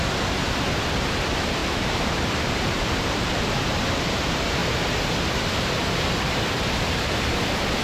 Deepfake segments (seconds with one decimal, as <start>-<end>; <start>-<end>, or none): 1.6-3.4